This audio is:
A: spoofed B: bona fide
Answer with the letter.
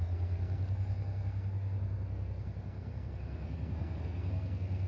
A